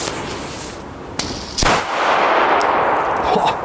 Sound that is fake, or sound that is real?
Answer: real